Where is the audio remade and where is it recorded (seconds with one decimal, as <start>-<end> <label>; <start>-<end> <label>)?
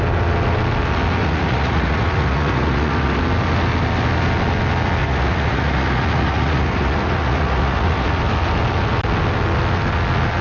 0.0-1.2 recorded; 1.2-3.2 remade; 3.2-5.0 recorded; 5.0-8.2 remade; 8.2-10.4 recorded